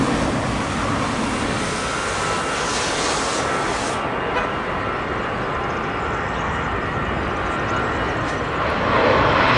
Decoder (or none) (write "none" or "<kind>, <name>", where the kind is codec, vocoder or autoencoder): none